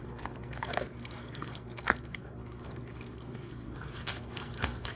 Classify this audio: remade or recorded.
remade